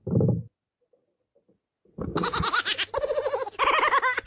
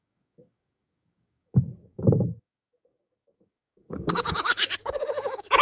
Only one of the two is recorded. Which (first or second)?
first